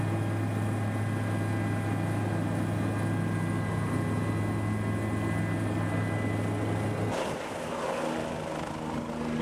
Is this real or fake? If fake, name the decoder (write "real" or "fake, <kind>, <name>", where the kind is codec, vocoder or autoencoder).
real